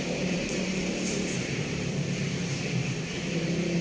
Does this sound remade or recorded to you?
remade